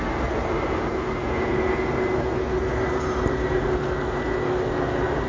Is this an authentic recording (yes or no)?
yes